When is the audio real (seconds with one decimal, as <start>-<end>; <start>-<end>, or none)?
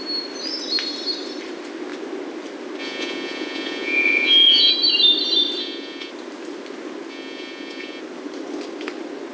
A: 0.0-2.8; 4.7-5.6; 6.1-7.1; 8.0-9.3